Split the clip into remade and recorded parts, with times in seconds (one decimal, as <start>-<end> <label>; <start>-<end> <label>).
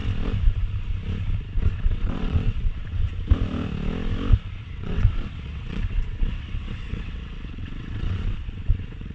0.0-1.6 recorded; 1.6-3.1 remade; 3.1-4.6 recorded; 4.6-9.1 remade